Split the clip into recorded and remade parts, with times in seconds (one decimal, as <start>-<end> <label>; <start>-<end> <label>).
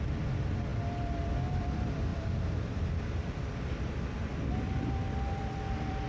0.0-0.7 remade; 0.7-1.6 recorded; 1.6-6.1 remade